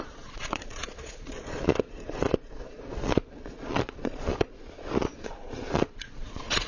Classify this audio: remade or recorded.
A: remade